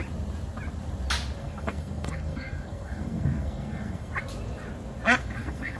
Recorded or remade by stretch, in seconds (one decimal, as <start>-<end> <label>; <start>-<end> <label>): 0.0-1.4 recorded; 1.4-4.1 remade; 4.1-5.2 recorded; 5.2-5.8 remade